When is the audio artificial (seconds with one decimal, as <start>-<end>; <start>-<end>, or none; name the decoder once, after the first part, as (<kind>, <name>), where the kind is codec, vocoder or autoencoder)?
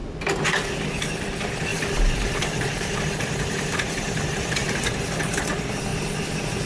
1.7-5.5 (vocoder, BigVGAN v2)